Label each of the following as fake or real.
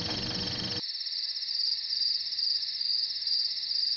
real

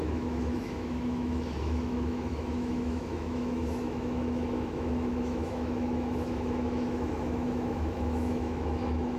fake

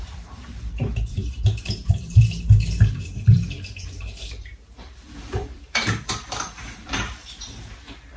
fake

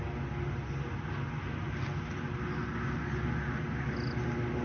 real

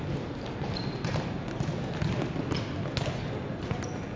real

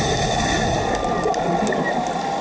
real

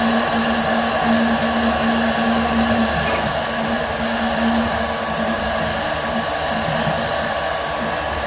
real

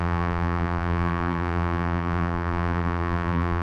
fake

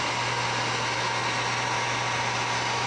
real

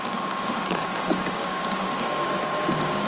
fake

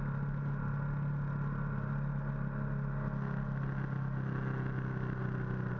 real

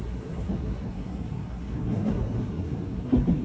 fake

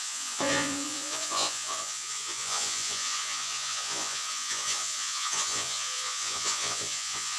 fake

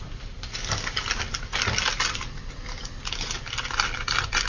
real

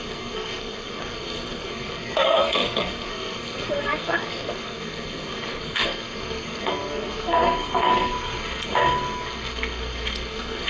fake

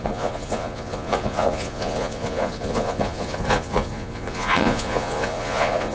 fake